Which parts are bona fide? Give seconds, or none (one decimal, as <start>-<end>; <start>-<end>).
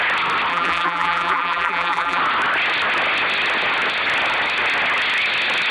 0.0-0.5; 2.2-5.7